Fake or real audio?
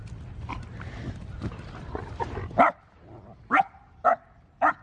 real